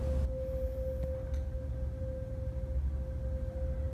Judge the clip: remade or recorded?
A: recorded